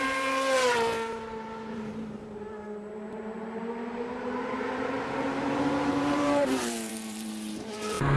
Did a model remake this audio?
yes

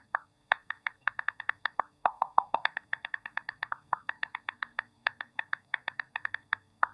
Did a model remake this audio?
yes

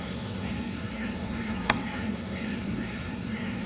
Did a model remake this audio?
yes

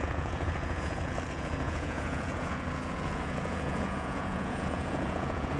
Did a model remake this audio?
yes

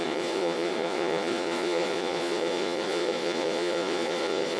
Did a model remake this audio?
yes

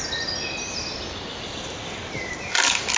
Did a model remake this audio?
no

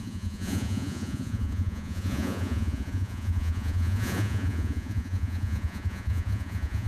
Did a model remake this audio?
yes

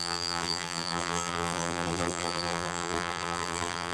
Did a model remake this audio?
yes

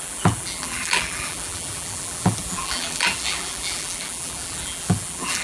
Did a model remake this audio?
yes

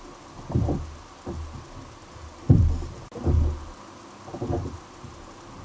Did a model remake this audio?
no